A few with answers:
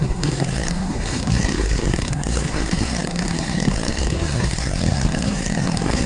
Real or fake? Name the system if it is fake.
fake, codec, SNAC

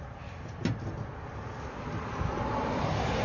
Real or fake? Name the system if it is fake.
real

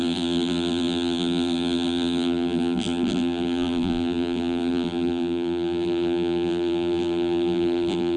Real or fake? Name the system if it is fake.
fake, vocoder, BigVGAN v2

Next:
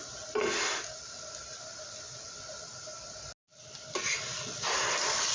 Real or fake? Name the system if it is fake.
real